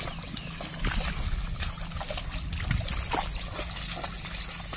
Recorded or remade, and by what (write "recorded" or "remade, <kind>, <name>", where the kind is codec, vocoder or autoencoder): recorded